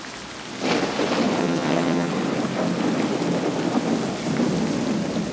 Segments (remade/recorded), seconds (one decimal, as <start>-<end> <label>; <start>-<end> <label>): 0.0-1.4 recorded; 1.4-2.1 remade; 2.1-5.3 recorded